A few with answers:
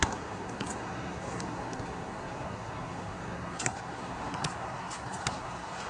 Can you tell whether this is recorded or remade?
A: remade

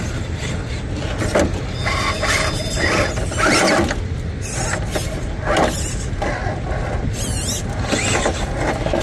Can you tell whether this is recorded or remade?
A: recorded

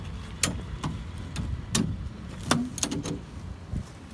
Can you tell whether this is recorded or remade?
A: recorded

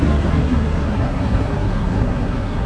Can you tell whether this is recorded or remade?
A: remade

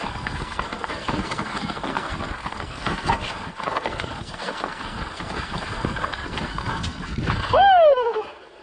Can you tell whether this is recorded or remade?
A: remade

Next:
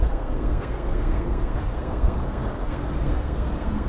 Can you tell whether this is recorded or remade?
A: remade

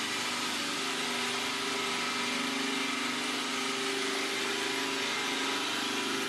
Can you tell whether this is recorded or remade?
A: recorded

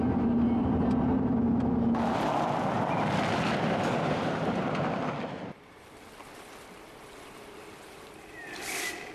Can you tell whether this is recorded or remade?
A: recorded